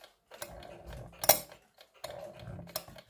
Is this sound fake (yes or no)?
no